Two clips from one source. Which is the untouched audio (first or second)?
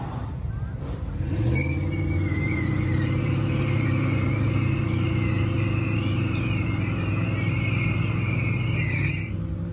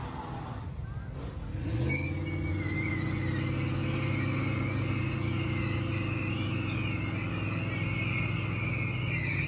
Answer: second